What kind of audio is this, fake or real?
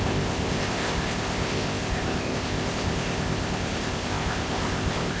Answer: fake